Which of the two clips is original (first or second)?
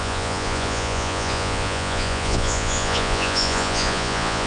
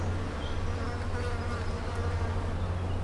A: second